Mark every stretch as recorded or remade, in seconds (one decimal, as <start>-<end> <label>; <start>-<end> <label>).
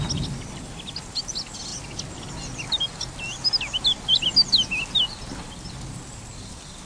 0.0-6.9 recorded